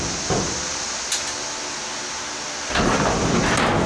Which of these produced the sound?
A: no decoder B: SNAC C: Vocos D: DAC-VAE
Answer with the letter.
A